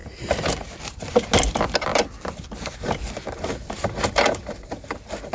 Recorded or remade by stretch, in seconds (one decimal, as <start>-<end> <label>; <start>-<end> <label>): 0.0-1.1 remade; 1.1-1.9 recorded; 1.9-5.3 remade

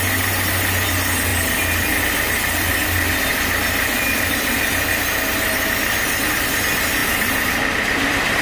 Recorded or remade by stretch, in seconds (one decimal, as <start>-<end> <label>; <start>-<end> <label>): 0.0-1.3 recorded; 1.3-2.7 remade; 2.7-3.3 recorded; 3.3-4.9 remade; 4.9-7.0 recorded; 7.0-8.4 remade